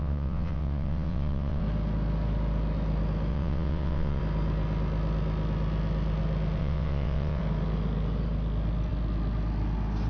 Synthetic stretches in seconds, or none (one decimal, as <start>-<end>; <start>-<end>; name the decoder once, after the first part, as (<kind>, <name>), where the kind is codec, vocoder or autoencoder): 0.0-1.6 (vocoder, WaveNeXt); 3.3-4.2; 6.6-7.4